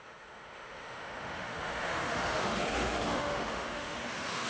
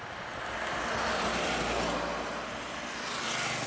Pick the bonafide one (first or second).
second